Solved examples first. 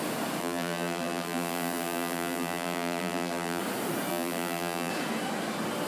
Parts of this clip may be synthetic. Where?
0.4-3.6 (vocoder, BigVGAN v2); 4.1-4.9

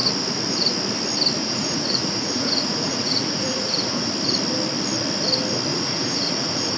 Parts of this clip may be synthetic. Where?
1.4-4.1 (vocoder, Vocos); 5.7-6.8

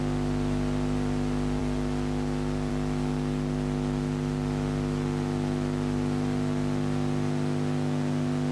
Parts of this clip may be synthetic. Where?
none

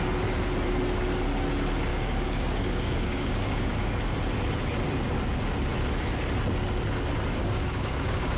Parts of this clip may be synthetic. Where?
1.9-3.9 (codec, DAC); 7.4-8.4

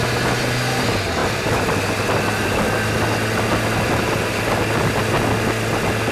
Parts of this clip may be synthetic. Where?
none

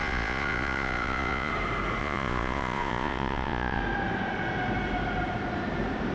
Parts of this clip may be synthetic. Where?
0.0-1.5 (vocoder, Vocos); 2.0-3.8